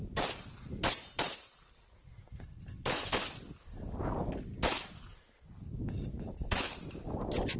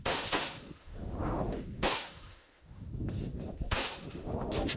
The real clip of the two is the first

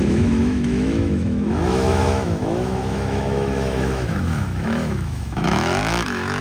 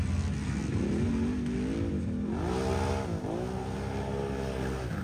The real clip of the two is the second